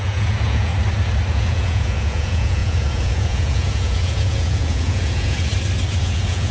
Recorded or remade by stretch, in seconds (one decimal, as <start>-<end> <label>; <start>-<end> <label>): 0.0-0.7 remade; 0.7-1.3 recorded; 1.3-5.5 remade; 5.5-6.0 recorded; 6.0-6.5 remade